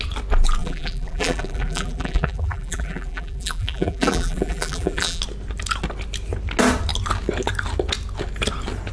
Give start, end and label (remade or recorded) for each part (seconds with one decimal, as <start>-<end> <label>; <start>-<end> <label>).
0.0-0.6 recorded; 0.6-5.2 remade; 5.2-8.9 recorded